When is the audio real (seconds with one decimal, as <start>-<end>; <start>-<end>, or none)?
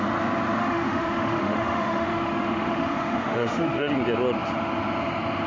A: 0.0-0.6; 3.9-5.5